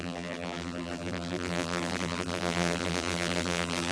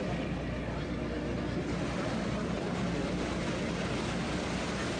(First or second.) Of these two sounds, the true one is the second